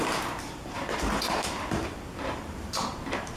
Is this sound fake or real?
fake